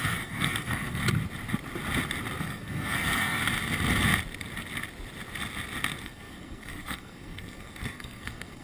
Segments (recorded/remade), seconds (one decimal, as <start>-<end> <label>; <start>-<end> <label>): 0.0-1.0 remade; 1.0-2.4 recorded; 2.4-3.4 remade; 3.4-6.0 recorded; 6.0-8.6 remade